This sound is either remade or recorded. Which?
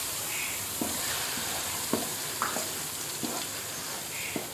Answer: recorded